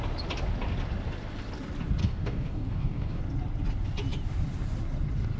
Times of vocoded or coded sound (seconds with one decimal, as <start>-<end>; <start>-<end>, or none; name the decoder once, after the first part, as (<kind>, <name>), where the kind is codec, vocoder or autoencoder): 2.0-3.2 (codec, DAC)